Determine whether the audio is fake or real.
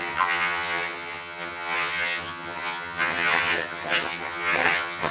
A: fake